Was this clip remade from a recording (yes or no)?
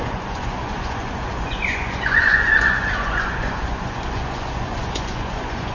yes